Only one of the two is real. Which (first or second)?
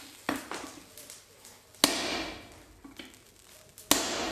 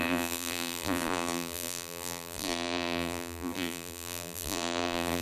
first